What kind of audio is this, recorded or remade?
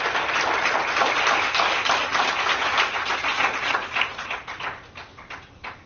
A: recorded